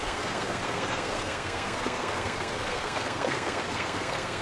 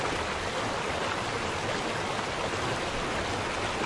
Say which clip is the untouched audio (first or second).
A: second